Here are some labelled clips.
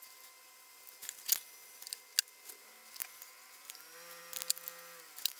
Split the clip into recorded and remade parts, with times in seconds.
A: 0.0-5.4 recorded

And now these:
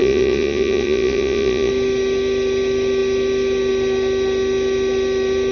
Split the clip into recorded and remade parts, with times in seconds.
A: 0.0-1.7 remade; 1.7-5.5 recorded